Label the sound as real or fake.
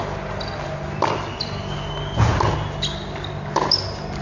real